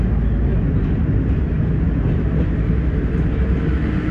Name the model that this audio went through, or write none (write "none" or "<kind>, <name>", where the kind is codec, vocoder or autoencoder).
none